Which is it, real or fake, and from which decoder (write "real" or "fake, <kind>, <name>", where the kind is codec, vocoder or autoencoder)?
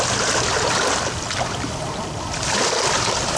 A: real